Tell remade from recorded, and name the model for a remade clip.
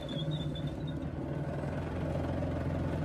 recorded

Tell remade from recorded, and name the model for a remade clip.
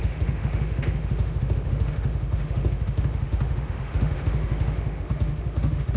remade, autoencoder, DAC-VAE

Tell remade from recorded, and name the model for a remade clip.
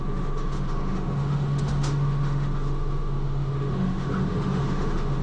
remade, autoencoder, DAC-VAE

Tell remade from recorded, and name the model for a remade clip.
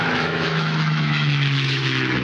remade, autoencoder, DAC-VAE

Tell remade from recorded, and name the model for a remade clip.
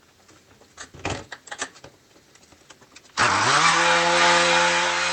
recorded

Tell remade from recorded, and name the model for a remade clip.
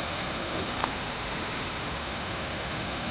remade, autoencoder, DAC-VAE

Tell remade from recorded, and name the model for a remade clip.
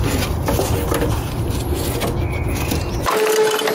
recorded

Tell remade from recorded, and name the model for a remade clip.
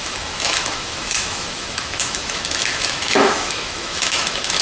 remade, autoencoder, DAC-VAE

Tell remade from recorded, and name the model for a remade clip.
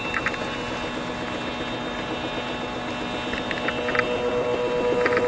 recorded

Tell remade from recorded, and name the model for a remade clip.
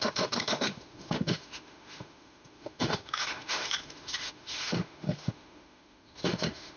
remade, autoencoder, DAC-VAE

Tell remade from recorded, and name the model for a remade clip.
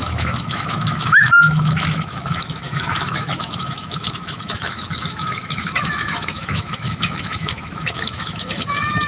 remade, autoencoder, DAC-VAE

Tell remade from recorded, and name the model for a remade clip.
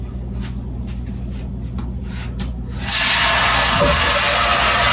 recorded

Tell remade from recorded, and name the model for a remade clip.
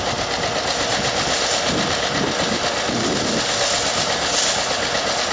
recorded